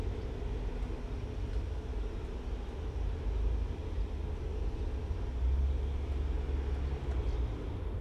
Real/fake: real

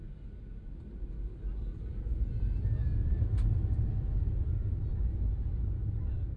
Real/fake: real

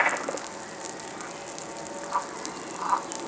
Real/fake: real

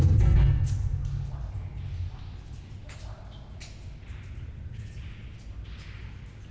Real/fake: real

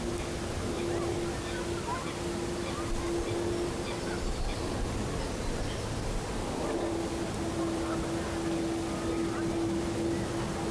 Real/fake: real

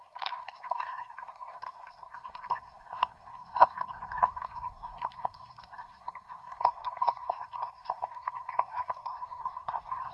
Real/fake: fake